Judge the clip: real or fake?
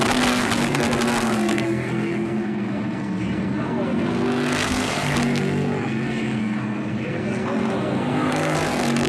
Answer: fake